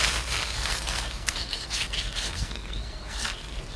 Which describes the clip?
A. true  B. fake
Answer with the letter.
B